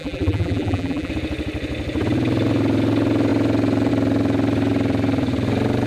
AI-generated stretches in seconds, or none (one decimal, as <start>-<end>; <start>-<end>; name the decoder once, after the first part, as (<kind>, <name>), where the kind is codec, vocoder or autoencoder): 0.0-1.1 (vocoder, BigVGAN v2)